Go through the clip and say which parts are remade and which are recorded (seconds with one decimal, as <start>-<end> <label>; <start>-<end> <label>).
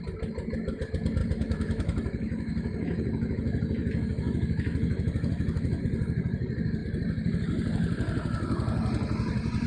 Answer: 0.0-1.2 recorded; 1.2-5.8 remade; 5.8-9.7 recorded